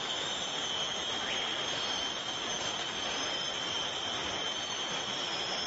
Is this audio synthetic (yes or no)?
no